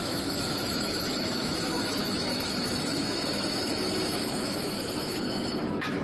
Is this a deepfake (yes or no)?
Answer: yes